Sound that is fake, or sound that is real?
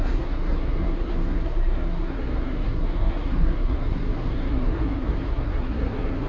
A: fake